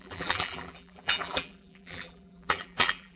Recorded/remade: remade